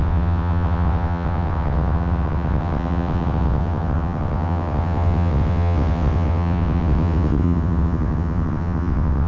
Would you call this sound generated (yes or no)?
yes